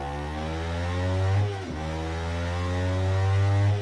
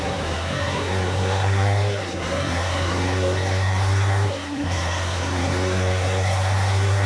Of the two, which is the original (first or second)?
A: first